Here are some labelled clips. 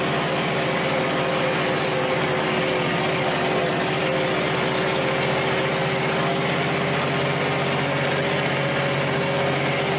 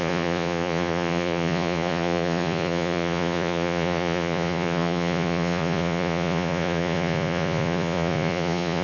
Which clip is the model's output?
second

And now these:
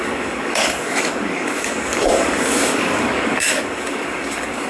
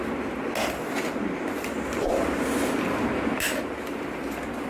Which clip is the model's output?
first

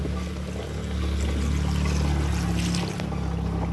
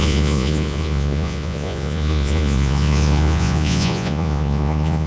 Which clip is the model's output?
second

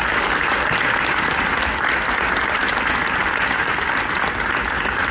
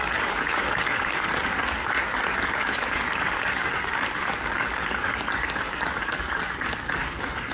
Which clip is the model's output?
second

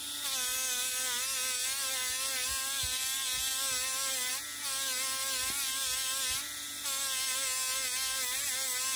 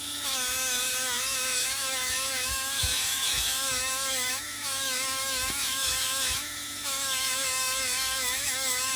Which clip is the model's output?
second